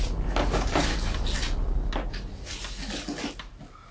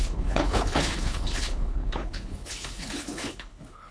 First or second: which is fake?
second